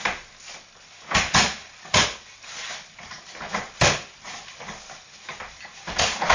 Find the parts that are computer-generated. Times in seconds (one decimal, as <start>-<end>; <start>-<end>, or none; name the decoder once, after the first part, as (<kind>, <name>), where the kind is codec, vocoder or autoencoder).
none